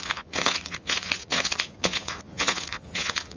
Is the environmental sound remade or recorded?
remade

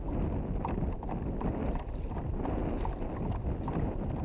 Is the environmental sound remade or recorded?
recorded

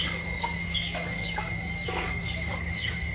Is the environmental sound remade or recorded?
remade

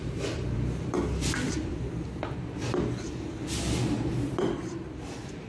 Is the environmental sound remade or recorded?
remade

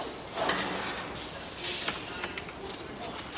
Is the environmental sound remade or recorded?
recorded